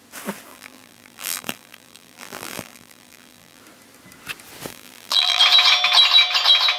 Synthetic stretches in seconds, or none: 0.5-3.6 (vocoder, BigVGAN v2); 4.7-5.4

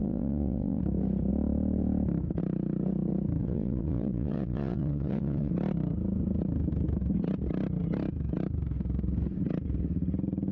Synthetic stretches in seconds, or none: 0.0-0.8 (vocoder, WaveNeXt); 3.4-5.5